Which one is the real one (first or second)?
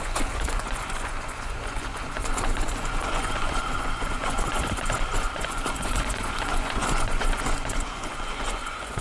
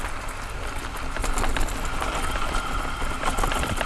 second